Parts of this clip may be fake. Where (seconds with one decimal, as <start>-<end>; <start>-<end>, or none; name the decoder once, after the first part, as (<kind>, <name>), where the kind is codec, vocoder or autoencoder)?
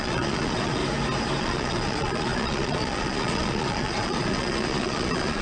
0.0-0.8 (vocoder, Vocos); 1.4-5.4